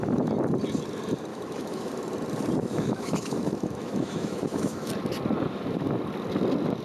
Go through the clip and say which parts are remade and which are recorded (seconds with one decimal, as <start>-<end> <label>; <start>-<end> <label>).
0.0-1.3 recorded; 1.3-1.9 remade; 1.9-2.7 recorded; 2.7-4.9 remade; 4.9-6.8 recorded

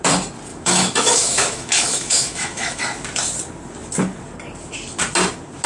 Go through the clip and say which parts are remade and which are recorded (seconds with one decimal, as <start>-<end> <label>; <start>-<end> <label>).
0.0-0.5 recorded; 0.5-2.8 remade; 2.8-5.7 recorded

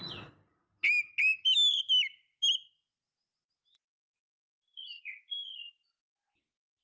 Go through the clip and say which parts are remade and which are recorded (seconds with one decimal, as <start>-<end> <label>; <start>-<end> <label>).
0.0-6.8 recorded

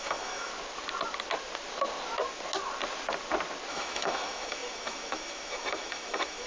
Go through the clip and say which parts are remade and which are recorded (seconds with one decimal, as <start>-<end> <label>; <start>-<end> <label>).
0.0-0.5 remade; 0.5-3.7 recorded; 3.7-6.5 remade